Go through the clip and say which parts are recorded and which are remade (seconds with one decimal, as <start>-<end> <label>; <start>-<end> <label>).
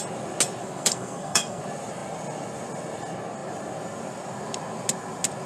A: 0.0-0.6 recorded; 0.6-1.6 remade; 1.6-5.5 recorded